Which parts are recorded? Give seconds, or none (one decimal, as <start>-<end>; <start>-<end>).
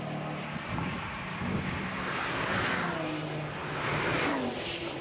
0.0-1.3; 1.8-5.0